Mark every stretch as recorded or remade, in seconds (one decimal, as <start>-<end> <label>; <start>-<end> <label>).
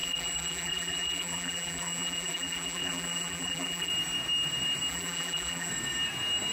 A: 0.0-3.9 remade; 3.9-4.9 recorded; 4.9-5.7 remade; 5.7-6.5 recorded